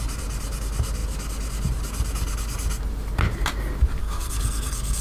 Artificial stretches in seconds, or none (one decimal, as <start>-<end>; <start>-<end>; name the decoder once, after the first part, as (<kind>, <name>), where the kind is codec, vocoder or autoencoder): 4.0-5.0 (codec, SNAC)